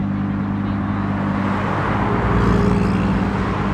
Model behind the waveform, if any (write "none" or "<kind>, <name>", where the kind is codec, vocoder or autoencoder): none